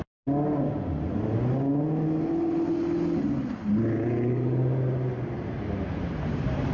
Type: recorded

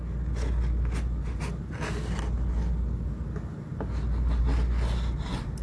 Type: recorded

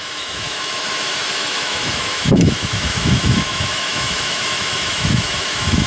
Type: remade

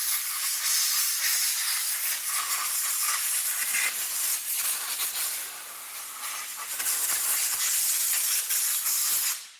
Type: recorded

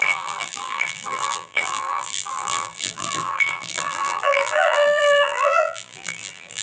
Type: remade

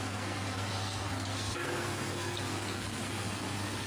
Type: remade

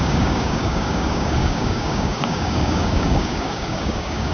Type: remade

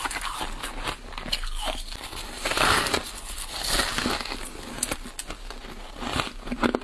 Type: recorded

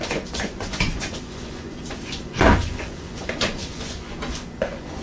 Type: remade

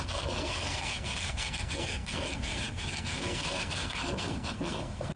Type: remade